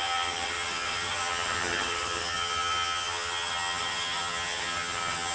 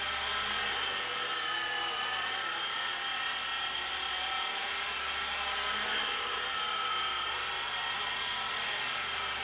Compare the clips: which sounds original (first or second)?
second